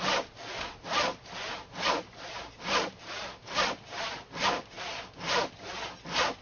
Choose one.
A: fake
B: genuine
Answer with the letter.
B